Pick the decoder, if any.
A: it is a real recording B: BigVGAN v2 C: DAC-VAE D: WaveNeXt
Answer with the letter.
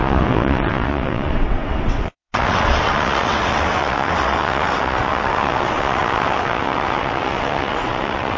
D